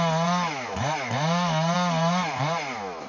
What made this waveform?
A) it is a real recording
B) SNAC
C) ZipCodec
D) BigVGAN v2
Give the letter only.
A